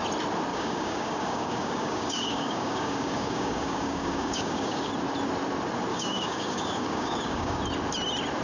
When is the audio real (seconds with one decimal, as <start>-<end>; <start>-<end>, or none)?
0.0-0.5; 4.9-5.9; 7.6-8.4